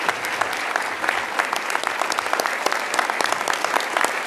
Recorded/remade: recorded